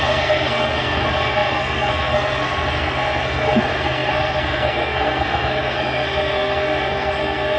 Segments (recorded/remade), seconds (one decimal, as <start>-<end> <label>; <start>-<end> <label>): 0.0-7.6 remade